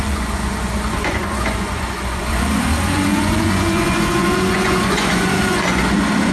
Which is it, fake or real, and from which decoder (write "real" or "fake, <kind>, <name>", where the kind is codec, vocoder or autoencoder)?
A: fake, vocoder, Vocos